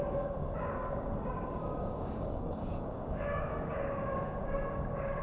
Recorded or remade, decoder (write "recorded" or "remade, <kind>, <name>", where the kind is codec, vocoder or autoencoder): remade, codec, DAC